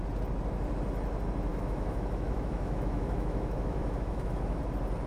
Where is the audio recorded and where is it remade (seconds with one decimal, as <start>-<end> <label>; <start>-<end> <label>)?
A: 0.0-1.5 recorded; 1.5-4.6 remade; 4.6-5.1 recorded